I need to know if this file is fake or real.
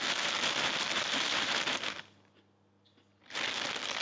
real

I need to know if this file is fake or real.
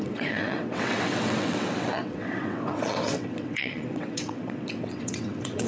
fake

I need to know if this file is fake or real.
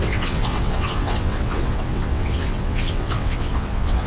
fake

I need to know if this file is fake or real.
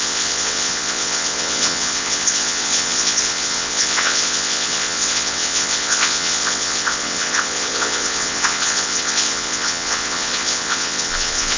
fake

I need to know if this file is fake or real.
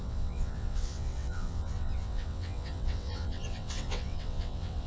fake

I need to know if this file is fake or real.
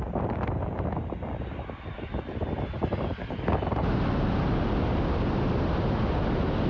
real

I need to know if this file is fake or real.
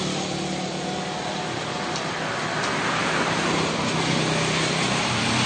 real